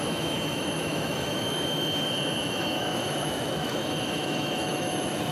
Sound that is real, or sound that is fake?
fake